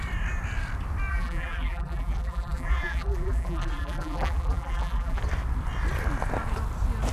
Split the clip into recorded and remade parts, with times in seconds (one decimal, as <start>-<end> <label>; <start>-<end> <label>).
0.0-1.1 recorded; 1.1-5.2 remade; 5.2-7.1 recorded